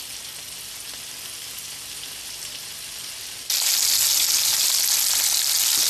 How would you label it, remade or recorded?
recorded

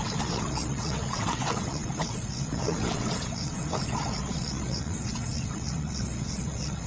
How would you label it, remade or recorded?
remade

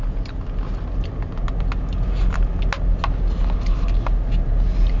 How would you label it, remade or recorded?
recorded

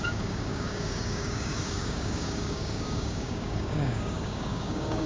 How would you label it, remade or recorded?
remade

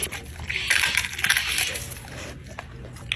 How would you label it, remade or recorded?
recorded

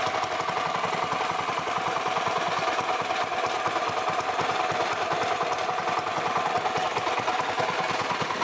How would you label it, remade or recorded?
recorded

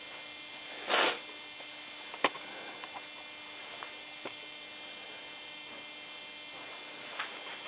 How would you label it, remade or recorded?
recorded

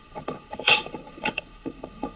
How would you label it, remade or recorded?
remade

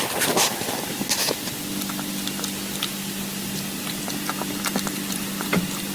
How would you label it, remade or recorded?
recorded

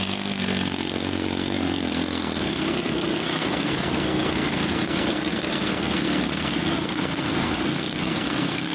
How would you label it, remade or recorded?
remade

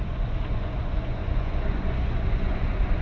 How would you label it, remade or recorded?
remade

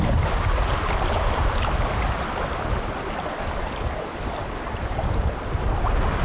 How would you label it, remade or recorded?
recorded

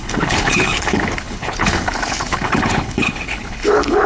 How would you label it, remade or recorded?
remade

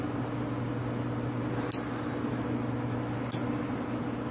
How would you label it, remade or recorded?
recorded